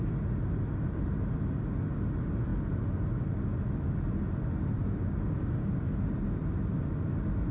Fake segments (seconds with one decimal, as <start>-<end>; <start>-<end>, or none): 4.8-5.7